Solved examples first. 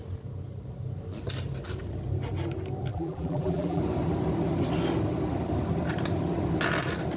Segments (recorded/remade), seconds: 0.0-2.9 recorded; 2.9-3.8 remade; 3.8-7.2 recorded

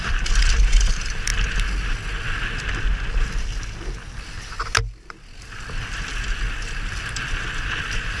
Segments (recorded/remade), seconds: 0.0-1.3 remade; 1.3-5.4 recorded; 5.4-6.1 remade; 6.1-6.7 recorded; 6.7-8.2 remade

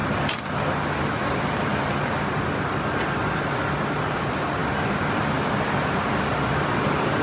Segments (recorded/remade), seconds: 0.0-7.2 recorded

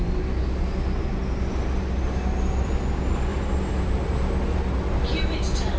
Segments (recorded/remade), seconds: 0.0-3.3 recorded; 3.3-4.6 remade; 4.6-5.8 recorded

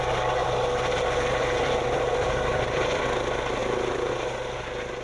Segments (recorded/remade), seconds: 0.0-0.4 recorded; 0.4-3.0 remade; 3.0-3.6 recorded; 3.6-4.1 remade; 4.1-5.0 recorded

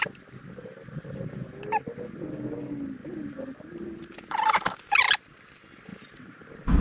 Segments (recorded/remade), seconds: 0.0-0.6 recorded; 0.6-1.5 remade; 1.5-3.0 recorded; 3.0-4.9 remade; 4.9-5.9 recorded; 5.9-6.8 remade

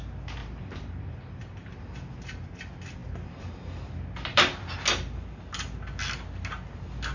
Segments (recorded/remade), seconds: 0.0-0.4 recorded; 0.4-1.8 remade; 1.8-7.1 recorded

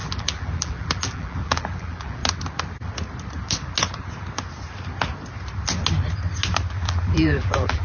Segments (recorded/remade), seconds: 0.0-2.2 remade; 2.2-6.7 recorded; 6.7-7.8 remade